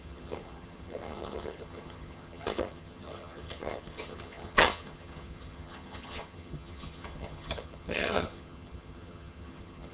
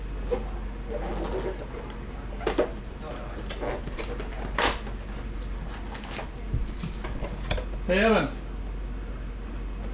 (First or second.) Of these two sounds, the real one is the second